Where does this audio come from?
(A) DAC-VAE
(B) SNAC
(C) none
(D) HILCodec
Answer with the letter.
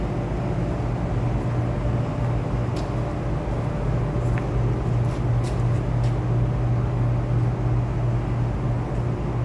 C